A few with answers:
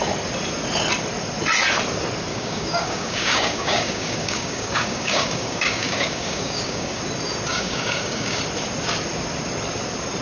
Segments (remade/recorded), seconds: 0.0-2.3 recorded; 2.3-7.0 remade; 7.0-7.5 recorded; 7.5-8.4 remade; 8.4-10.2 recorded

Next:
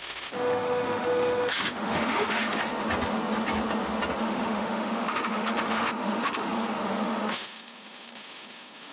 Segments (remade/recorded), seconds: 0.0-2.7 remade; 2.7-4.2 recorded; 4.2-8.9 remade

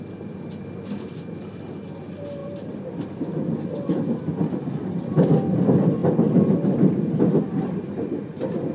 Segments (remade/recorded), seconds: 0.0-8.7 recorded